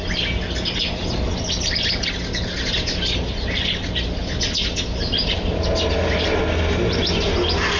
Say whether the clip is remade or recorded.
recorded